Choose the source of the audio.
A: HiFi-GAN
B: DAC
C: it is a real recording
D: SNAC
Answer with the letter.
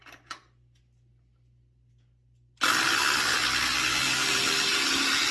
C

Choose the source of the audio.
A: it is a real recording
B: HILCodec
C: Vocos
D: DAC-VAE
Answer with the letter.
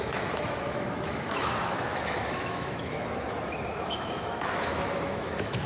D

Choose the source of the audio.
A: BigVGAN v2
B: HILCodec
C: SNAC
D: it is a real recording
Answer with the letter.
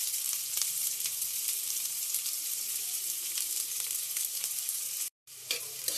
A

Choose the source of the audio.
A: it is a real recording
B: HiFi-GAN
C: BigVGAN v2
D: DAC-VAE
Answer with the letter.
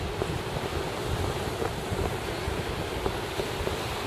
A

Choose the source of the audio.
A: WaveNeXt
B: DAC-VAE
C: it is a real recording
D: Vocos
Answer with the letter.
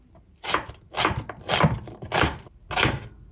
C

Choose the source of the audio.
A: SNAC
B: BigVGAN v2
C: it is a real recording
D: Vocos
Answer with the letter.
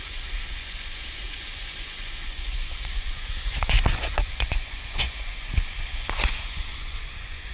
D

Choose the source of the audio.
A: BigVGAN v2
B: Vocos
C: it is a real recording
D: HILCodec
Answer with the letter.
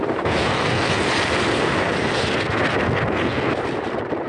C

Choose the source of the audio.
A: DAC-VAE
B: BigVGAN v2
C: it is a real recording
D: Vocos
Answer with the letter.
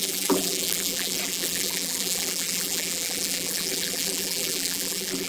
B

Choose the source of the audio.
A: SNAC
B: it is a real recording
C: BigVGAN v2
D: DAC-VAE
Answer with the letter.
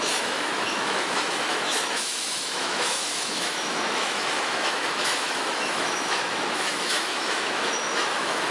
D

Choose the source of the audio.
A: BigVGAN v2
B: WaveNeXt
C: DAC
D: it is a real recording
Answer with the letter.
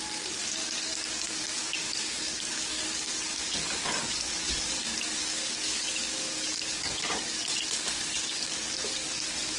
C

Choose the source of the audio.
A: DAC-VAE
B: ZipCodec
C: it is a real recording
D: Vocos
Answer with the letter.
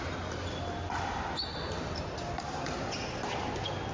C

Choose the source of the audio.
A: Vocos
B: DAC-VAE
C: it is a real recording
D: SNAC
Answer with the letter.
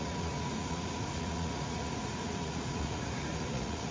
A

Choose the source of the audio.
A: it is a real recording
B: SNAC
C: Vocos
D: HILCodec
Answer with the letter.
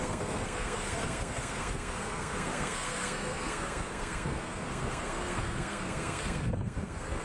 B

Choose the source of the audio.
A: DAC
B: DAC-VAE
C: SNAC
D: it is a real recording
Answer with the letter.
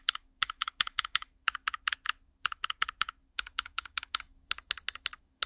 B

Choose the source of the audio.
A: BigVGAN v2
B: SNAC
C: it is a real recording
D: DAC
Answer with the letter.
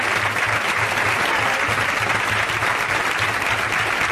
C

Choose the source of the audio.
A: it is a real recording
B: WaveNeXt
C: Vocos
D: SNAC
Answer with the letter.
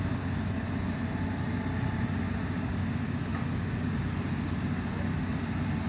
A